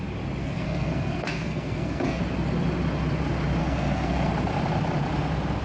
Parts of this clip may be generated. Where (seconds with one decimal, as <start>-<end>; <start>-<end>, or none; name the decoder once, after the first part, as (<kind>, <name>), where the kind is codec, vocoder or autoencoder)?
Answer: 0.4-2.2 (codec, SNAC); 3.6-4.3